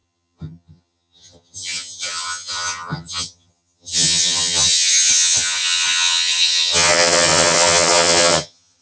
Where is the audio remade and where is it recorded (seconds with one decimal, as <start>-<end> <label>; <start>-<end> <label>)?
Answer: 0.0-8.8 remade